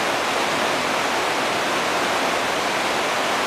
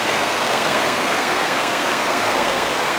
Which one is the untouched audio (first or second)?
first